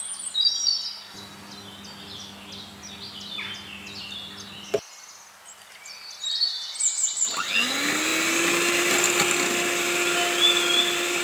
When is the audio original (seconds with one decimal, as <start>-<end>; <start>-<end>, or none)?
0.0-11.2